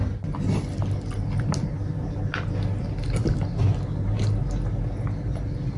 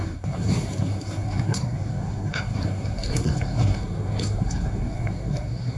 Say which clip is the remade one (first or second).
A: second